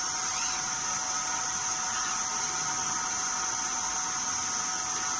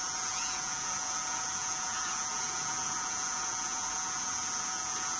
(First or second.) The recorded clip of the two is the first